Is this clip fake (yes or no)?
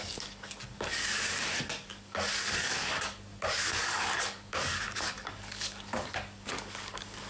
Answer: yes